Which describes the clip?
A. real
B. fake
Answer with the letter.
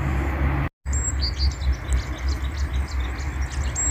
A